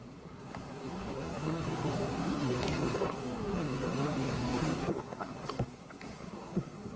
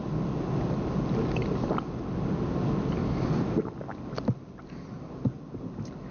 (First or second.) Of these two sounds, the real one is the second